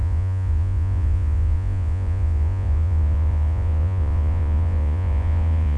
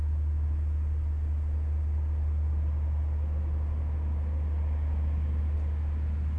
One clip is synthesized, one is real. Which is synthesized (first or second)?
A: first